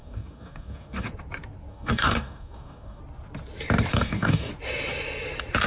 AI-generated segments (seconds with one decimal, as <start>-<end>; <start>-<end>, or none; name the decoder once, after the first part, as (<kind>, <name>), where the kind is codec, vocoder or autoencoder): 0.0-1.1 (codec, DAC); 1.7-3.0; 3.9-4.5